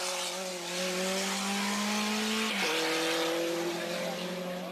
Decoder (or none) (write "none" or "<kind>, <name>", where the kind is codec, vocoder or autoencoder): none